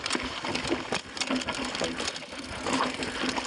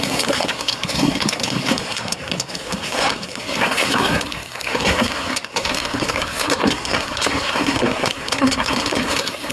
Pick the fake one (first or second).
second